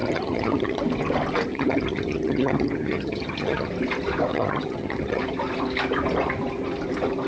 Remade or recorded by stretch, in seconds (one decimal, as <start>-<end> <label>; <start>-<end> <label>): 0.0-0.8 remade; 0.8-1.5 recorded; 1.5-3.7 remade; 3.7-4.3 recorded; 4.3-5.2 remade; 5.2-7.3 recorded